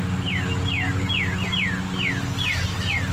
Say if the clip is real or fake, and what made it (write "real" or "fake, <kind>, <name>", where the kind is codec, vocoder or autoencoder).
real